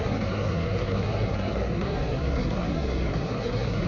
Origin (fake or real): fake